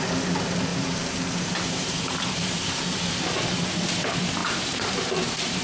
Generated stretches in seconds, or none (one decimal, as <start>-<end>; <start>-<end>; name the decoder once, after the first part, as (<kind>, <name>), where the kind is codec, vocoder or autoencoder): 0.7-3.1 (vocoder, BigVGAN v2); 4.4-5.6

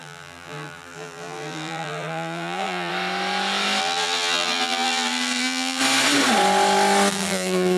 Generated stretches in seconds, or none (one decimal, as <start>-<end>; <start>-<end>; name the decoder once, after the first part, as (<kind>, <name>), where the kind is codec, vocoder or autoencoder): 0.0-2.9 (vocoder, BigVGAN v2); 3.8-5.8; 7.1-7.8

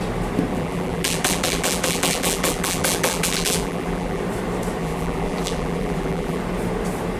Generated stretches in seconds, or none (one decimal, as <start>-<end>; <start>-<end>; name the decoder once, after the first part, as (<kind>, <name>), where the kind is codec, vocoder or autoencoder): 0.5-4.2 (vocoder, BigVGAN v2); 4.8-6.4

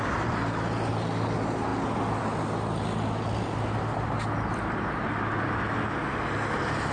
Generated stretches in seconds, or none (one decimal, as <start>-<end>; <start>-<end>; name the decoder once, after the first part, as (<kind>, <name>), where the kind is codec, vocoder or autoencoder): none

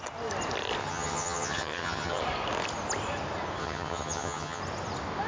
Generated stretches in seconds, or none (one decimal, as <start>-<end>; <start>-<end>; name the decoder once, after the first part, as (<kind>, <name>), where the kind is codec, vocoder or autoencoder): 0.8-2.2 (vocoder, HiFi-GAN); 3.6-4.6

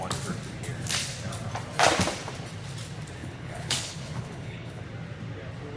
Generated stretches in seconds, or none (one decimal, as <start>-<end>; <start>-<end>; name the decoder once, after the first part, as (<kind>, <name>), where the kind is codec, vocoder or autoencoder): 3.2-4.8 (codec, HILCodec)

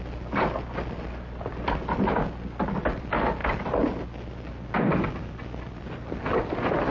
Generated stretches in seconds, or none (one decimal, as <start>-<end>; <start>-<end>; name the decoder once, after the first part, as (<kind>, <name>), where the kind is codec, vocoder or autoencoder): none

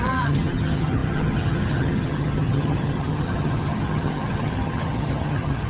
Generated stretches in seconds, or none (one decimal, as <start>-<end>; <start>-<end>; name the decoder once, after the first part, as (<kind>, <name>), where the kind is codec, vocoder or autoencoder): 0.0-5.7 (vocoder, HiFi-GAN)